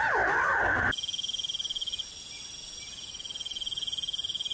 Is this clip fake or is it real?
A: real